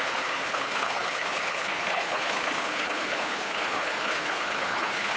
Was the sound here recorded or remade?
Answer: remade